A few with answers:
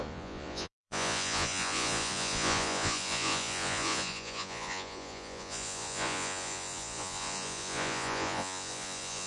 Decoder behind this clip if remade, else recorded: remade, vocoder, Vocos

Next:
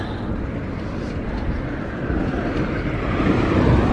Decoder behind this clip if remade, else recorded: remade, vocoder, BigVGAN v2